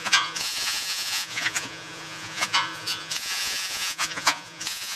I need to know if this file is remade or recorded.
remade